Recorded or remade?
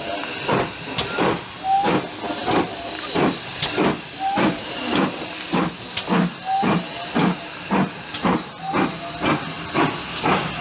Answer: recorded